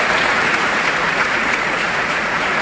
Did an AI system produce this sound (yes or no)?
yes